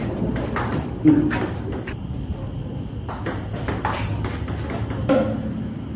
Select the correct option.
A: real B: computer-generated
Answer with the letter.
A